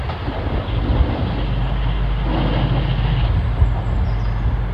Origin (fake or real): real